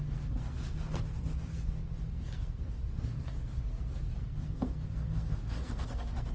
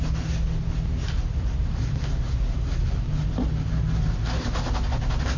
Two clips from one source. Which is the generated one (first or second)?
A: first